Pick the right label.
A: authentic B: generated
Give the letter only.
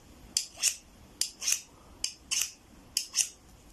A